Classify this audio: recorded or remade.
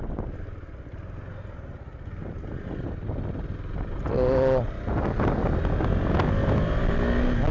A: recorded